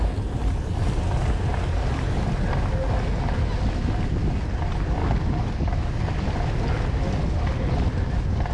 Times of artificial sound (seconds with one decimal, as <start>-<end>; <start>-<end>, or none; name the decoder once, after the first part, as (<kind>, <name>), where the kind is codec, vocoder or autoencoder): 5.0-6.3 (codec, DAC)